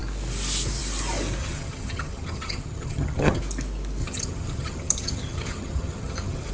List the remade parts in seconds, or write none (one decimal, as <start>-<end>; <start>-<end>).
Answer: 1.4-3.4; 4.0-6.5